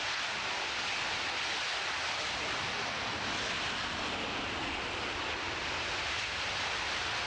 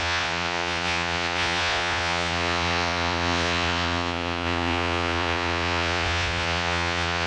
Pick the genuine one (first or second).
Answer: first